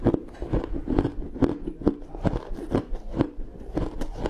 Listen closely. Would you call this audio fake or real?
real